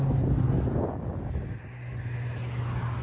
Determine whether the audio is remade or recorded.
recorded